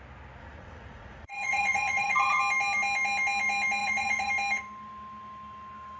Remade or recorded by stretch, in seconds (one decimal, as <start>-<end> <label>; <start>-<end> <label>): 0.0-0.4 recorded; 0.4-2.4 remade; 2.4-3.8 recorded; 3.8-4.3 remade; 4.3-6.0 recorded

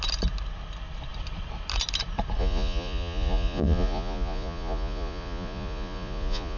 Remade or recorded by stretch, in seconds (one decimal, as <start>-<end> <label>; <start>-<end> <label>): 0.0-2.4 recorded; 2.4-6.6 remade

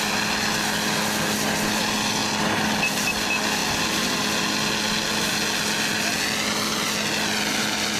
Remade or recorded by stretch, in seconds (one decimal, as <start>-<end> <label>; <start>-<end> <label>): 0.0-8.0 recorded

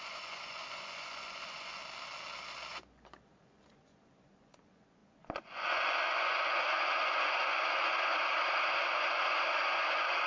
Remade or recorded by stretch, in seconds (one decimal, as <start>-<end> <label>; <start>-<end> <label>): 0.0-1.8 remade; 1.8-2.7 recorded; 2.7-8.1 remade; 8.1-8.8 recorded; 8.8-10.3 remade

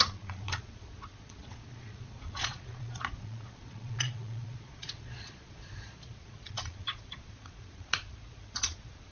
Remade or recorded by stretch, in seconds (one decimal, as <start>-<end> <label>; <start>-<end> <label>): 0.0-9.1 remade

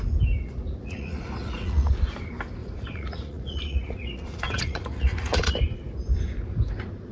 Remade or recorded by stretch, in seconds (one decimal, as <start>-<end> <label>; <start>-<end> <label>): 0.0-0.8 recorded; 0.8-1.9 remade; 1.9-2.6 recorded; 2.6-5.5 remade; 5.5-7.1 recorded

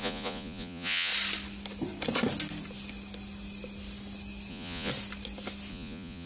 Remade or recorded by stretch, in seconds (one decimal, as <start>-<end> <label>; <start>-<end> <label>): 0.0-1.1 remade; 1.1-4.5 recorded; 4.5-4.9 remade; 4.9-5.7 recorded; 5.7-6.3 remade